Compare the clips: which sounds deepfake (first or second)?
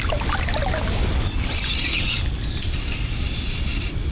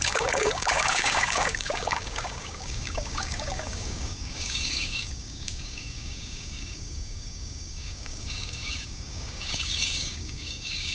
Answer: second